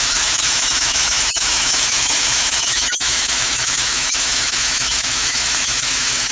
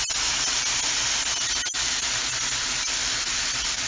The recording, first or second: second